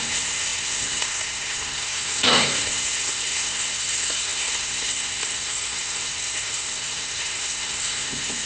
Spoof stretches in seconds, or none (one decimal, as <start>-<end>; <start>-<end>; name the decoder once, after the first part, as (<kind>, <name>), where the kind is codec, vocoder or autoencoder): 0.0-8.5 (codec, SNAC)